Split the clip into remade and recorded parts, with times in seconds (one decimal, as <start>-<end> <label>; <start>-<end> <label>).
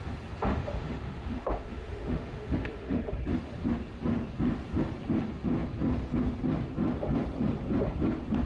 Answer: 0.0-0.4 recorded; 0.4-3.1 remade; 3.1-8.5 recorded